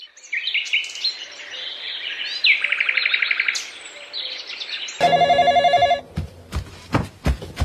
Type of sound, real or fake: real